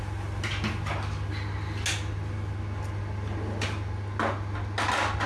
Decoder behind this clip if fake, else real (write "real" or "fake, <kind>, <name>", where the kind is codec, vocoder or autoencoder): real